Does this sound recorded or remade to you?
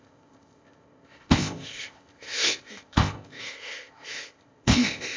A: remade